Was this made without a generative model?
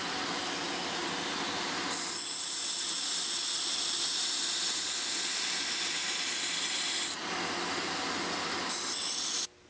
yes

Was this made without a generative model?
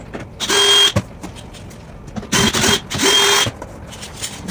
yes